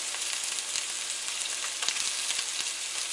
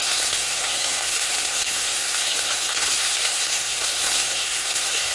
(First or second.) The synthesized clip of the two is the second